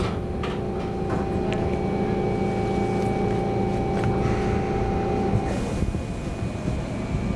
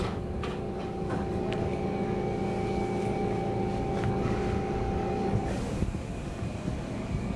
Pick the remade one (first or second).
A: second